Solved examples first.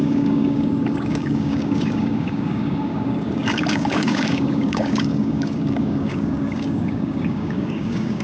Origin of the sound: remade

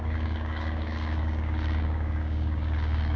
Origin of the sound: remade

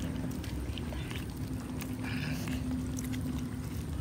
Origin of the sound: recorded